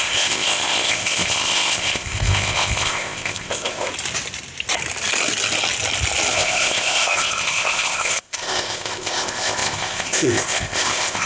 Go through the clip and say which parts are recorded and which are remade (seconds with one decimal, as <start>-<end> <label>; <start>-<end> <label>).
0.0-3.9 remade; 3.9-6.3 recorded; 6.3-11.3 remade

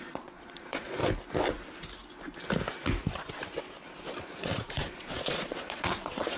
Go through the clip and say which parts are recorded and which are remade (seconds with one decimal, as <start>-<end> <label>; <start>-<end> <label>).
0.0-1.0 remade; 1.0-4.2 recorded; 4.2-6.4 remade

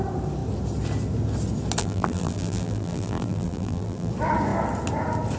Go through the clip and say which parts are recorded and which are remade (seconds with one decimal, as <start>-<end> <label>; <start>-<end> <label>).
0.0-1.8 recorded; 1.8-4.1 remade; 4.1-5.4 recorded

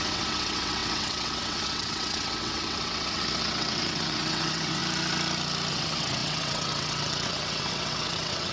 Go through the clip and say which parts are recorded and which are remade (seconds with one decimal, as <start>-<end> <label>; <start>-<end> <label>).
0.0-4.8 remade; 4.8-5.7 recorded; 5.7-8.5 remade

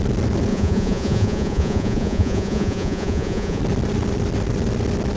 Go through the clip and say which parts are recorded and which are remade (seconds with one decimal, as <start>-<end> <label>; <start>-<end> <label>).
0.0-0.5 recorded; 0.5-3.6 remade; 3.6-5.2 recorded

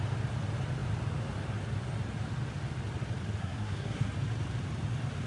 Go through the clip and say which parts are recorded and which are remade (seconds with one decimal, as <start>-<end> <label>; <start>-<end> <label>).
0.0-3.4 recorded; 3.4-4.1 remade; 4.1-5.3 recorded

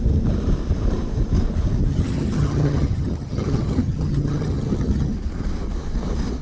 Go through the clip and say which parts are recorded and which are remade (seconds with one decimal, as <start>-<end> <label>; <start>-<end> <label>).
0.0-1.9 recorded; 1.9-5.1 remade; 5.1-6.4 recorded